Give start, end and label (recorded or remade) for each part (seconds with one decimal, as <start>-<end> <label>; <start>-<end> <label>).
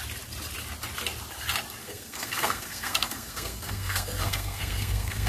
0.0-1.8 recorded; 1.8-5.3 remade